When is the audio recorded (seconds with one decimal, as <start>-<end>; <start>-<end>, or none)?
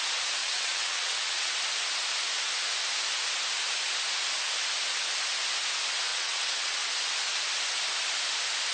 0.0-0.4; 1.5-6.1; 6.9-8.7